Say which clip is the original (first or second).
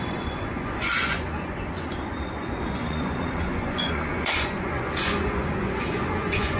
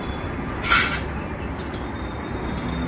second